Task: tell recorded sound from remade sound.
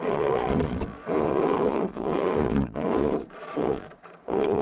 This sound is remade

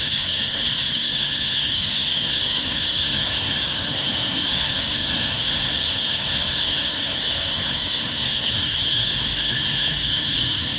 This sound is remade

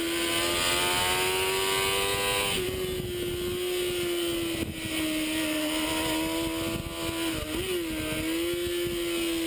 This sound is recorded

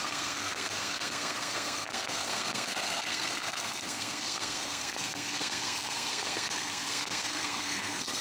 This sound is remade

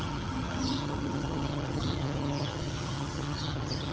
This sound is remade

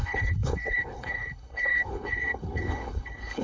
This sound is remade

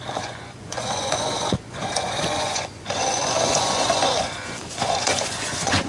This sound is remade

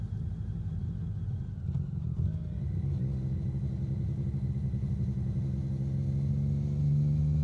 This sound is recorded